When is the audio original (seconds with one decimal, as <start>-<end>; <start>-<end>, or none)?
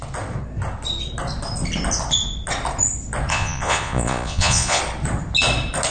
0.0-3.3; 4.8-5.9